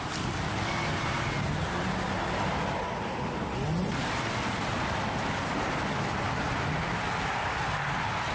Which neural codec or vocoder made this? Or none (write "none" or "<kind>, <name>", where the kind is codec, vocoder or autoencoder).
none